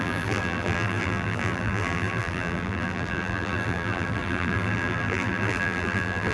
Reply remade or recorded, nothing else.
remade